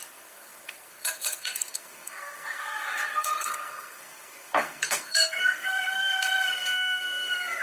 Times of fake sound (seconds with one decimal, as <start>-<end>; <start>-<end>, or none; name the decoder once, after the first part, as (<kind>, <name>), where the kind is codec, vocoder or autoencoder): 0.0-7.6 (codec, SNAC)